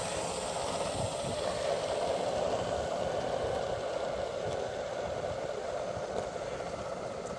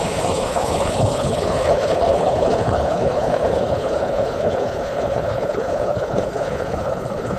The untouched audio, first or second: first